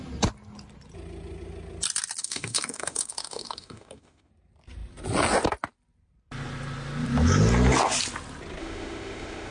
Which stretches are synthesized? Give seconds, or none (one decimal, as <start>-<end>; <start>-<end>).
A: 2.2-4.3; 8.6-9.5